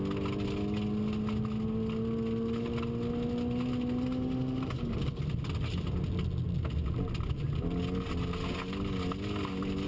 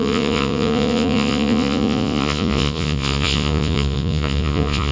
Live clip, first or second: first